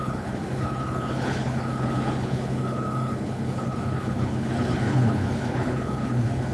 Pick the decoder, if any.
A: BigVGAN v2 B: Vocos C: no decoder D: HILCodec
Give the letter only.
D